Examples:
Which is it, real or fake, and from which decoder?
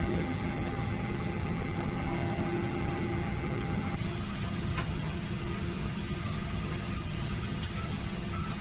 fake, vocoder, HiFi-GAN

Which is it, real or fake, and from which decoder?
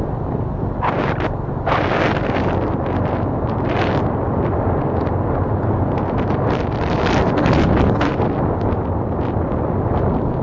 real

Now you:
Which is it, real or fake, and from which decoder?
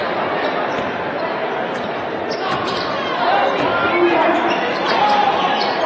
fake, vocoder, BigVGAN v2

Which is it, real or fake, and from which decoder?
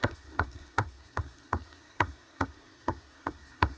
fake, codec, SNAC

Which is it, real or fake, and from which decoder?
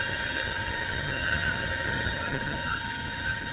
fake, vocoder, HiFi-GAN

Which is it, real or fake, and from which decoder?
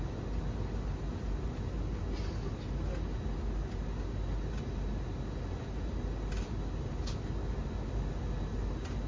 real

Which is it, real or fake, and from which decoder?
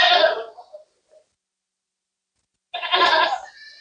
real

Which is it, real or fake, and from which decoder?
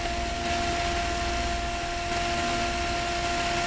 real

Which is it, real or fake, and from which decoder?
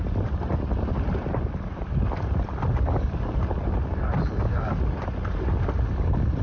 real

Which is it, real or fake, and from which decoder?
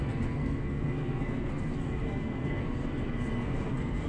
fake, codec, SNAC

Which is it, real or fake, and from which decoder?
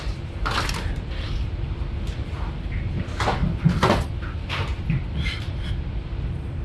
real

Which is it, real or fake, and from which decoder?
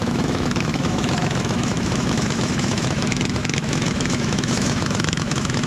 fake, autoencoder, DAC-VAE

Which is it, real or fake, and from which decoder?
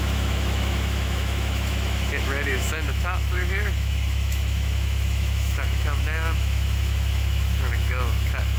fake, autoencoder, DAC-VAE